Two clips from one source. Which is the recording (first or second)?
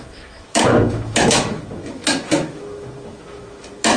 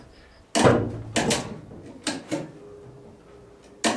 second